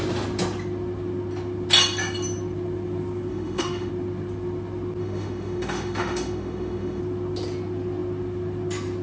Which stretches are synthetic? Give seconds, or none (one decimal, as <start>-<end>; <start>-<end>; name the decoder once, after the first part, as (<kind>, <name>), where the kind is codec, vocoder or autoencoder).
3.3-3.9 (autoencoder, DAC-VAE); 5.0-7.0

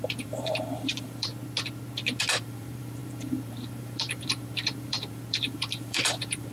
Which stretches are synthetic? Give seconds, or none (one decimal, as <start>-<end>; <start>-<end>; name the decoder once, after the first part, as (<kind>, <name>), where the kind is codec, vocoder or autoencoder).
0.0-1.3 (vocoder, BigVGAN v2); 2.4-6.5